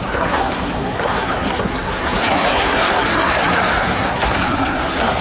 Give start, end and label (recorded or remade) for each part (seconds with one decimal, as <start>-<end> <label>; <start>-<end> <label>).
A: 0.0-5.2 remade